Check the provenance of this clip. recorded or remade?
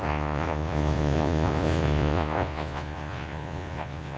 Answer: remade